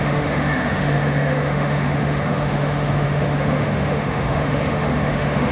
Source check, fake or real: fake